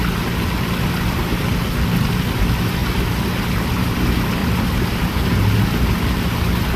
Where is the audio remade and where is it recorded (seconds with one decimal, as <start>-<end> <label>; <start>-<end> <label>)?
0.0-4.4 recorded; 4.4-5.6 remade; 5.6-6.8 recorded